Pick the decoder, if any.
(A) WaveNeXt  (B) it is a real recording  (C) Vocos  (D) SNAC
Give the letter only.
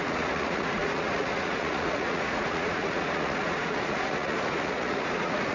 C